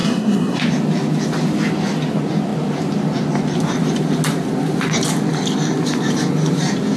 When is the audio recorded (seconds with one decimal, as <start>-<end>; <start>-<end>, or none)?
0.6-7.0